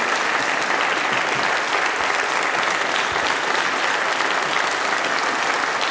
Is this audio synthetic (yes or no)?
no